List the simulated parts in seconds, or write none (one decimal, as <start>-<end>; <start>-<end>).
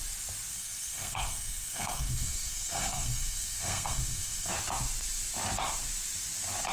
0.5-4.5